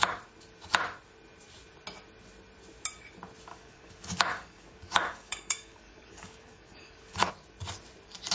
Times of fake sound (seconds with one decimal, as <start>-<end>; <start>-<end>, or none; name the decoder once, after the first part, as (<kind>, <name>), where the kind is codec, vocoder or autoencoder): 3.5-7.3 (codec, DAC)